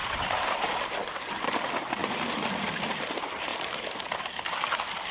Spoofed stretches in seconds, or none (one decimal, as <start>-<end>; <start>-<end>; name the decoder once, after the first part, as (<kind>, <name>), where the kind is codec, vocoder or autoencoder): 0.0-0.7 (vocoder, BigVGAN v2); 2.0-3.0; 3.5-4.4